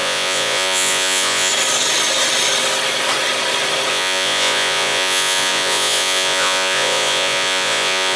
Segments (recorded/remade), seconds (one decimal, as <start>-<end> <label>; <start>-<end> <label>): 0.0-1.5 remade; 1.5-3.9 recorded; 3.9-8.2 remade